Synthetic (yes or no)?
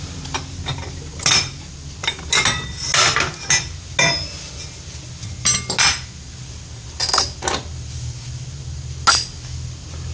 no